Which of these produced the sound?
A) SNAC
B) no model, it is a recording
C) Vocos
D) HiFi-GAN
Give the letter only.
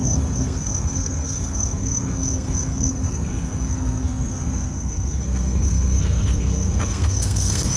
A